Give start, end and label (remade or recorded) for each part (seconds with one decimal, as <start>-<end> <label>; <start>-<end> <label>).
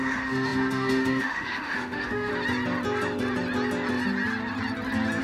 0.0-2.3 remade; 2.3-5.2 recorded